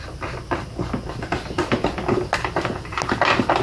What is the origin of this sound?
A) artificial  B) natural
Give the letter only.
B